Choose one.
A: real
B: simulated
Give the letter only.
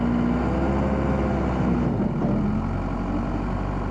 A